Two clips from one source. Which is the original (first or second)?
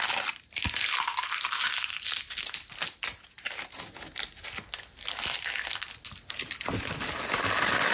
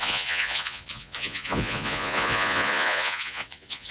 first